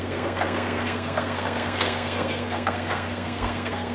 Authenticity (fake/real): fake